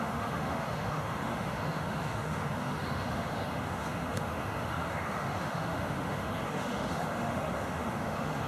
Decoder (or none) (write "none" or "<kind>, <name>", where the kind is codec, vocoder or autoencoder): autoencoder, DAC-VAE